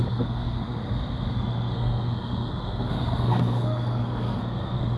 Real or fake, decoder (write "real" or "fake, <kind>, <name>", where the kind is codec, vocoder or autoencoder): fake, codec, SNAC